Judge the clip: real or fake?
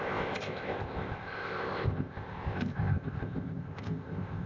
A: fake